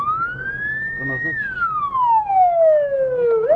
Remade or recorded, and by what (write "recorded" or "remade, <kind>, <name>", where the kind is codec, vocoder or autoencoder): recorded